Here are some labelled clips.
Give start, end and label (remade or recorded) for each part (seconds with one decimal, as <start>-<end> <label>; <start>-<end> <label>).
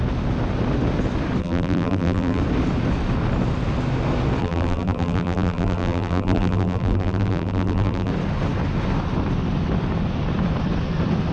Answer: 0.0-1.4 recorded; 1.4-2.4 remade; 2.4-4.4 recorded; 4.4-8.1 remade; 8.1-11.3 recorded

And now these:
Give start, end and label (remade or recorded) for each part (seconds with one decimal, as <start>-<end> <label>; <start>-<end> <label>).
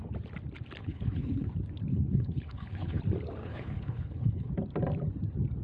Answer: 0.0-0.8 recorded; 0.8-1.5 remade; 1.5-1.9 recorded; 1.9-3.0 remade; 3.0-3.4 recorded; 3.4-4.5 remade; 4.5-5.6 recorded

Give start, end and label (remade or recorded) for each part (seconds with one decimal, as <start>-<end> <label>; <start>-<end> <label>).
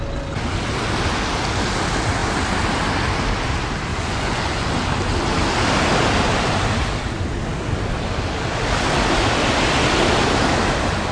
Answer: 0.0-3.9 recorded; 3.9-4.7 remade; 4.7-11.1 recorded